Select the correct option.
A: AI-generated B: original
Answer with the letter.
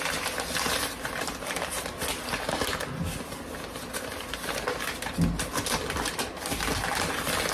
B